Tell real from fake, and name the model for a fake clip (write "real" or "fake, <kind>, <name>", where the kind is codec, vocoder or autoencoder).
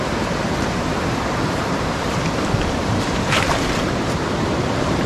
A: fake, vocoder, BigVGAN v2